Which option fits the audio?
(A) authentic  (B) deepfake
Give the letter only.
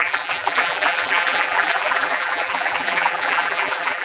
B